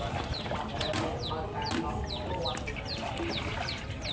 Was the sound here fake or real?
real